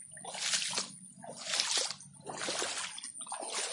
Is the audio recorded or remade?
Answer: recorded